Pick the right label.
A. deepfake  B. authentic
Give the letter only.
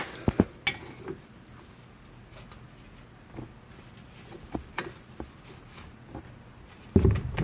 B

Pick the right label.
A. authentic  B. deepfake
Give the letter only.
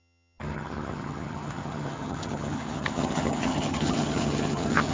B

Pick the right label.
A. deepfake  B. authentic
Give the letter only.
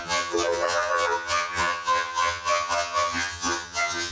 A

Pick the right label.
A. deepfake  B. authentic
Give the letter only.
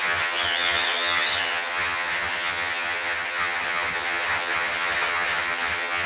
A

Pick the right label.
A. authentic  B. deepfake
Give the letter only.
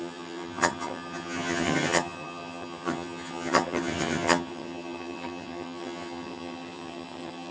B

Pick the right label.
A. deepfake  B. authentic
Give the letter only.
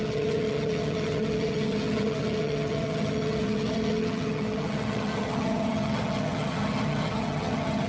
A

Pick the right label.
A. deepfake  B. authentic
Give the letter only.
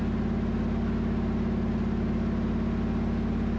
B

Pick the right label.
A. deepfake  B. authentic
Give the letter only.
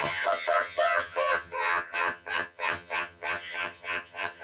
A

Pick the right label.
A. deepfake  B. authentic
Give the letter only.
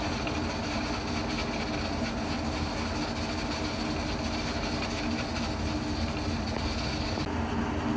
B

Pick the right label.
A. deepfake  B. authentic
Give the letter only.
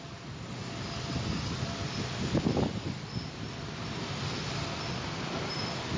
B